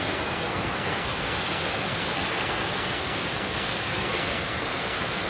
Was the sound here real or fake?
fake